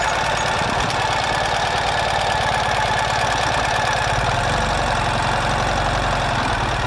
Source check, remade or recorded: recorded